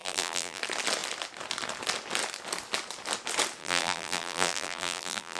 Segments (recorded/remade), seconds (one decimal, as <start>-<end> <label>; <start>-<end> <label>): 0.0-0.6 remade; 0.6-3.6 recorded; 3.6-5.4 remade